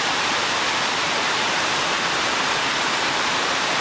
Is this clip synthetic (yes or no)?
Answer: yes